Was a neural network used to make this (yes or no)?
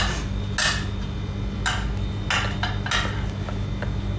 no